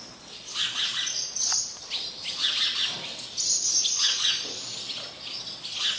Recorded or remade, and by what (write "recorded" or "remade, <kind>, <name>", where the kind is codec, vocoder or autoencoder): recorded